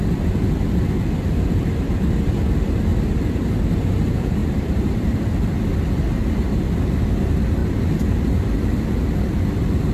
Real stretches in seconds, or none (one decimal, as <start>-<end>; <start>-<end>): 0.0-2.9; 3.7-4.4; 5.3-9.9